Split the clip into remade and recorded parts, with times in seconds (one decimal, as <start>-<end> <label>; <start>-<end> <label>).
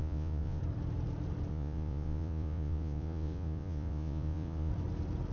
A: 0.0-0.6 remade; 0.6-1.5 recorded; 1.5-4.7 remade; 4.7-5.3 recorded